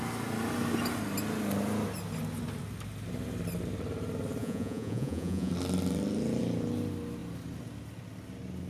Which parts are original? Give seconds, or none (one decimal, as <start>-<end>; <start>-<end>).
0.0-4.4; 5.5-8.7